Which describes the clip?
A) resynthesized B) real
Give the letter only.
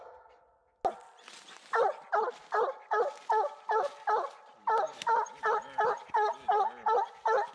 B